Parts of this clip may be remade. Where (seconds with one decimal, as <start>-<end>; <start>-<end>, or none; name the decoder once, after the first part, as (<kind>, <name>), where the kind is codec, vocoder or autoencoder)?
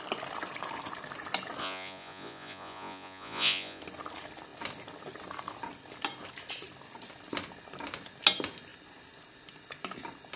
1.6-3.8 (vocoder, Vocos)